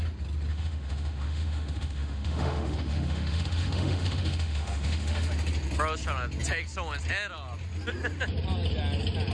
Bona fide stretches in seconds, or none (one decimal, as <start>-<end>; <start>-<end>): 0.0-0.5; 5.3-9.3